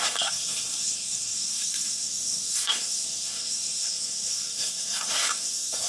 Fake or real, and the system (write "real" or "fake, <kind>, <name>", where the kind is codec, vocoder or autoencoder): fake, codec, SNAC